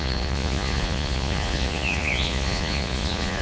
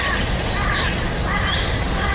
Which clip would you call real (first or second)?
second